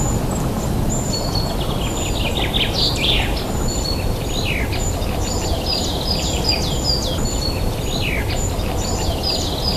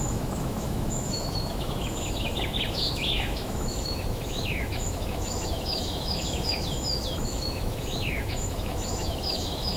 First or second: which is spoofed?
second